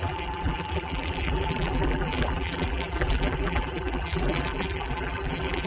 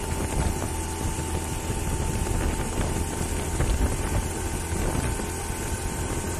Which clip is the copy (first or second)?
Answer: first